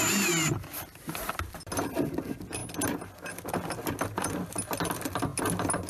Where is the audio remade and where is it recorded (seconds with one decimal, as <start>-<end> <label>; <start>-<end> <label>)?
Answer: 0.0-5.9 recorded